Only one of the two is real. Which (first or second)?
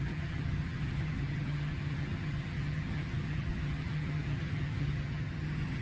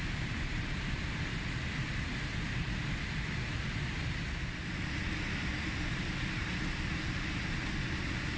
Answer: second